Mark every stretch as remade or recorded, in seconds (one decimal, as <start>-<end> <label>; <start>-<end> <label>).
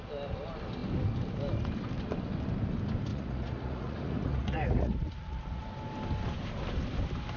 0.0-3.1 recorded; 3.1-5.6 remade; 5.6-7.4 recorded